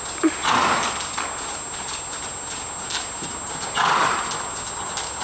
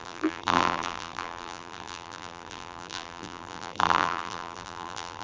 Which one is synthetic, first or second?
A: second